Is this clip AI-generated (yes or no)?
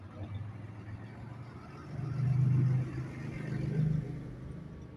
no